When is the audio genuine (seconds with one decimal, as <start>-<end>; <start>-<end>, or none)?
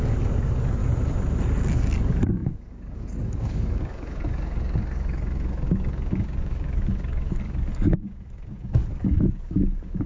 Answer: 0.8-1.7